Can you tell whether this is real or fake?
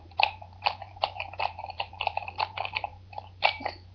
fake